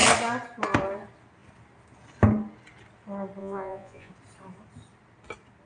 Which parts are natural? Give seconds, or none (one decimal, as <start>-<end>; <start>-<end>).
0.0-3.4; 4.1-5.7